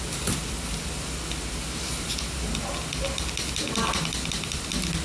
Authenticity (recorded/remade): recorded